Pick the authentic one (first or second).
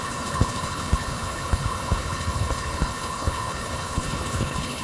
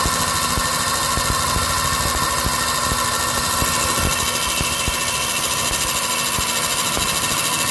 second